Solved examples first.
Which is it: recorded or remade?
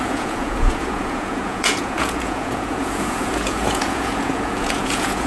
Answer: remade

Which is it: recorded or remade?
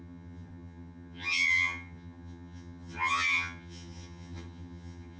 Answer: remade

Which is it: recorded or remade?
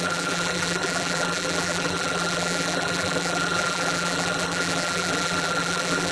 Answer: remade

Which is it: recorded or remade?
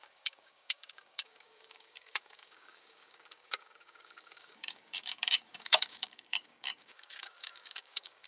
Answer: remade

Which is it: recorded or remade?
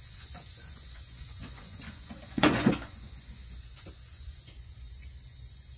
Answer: remade